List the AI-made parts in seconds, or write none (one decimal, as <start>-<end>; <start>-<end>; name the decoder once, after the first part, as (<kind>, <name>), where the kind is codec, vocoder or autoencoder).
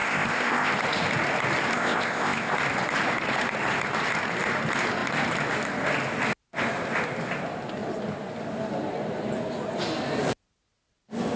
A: 0.0-0.7 (codec, ZipCodec); 1.7-2.5